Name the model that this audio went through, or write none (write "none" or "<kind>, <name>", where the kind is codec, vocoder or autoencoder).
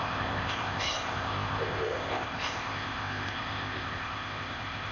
codec, ZipCodec